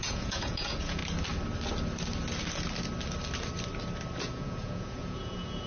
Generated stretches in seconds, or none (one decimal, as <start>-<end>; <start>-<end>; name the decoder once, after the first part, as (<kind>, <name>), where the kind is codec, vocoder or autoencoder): 0.0-1.0 (vocoder, Vocos); 4.2-5.7